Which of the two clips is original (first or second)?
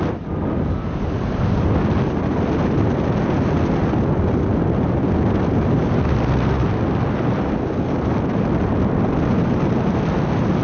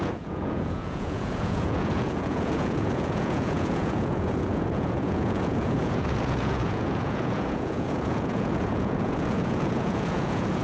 first